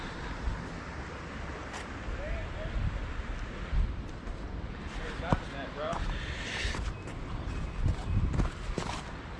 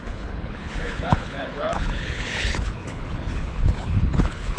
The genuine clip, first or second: first